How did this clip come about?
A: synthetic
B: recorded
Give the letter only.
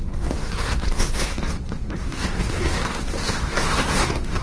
A